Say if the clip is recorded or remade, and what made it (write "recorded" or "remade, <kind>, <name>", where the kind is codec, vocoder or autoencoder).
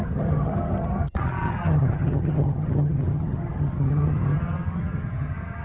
remade, vocoder, HiFi-GAN